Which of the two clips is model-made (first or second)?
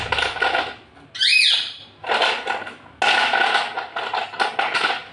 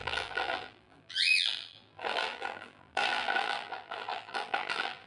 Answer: second